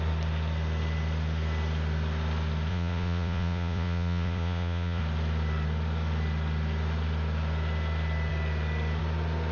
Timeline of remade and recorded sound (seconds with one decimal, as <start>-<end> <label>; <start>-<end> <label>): 0.0-2.7 recorded; 2.7-5.0 remade; 5.0-9.5 recorded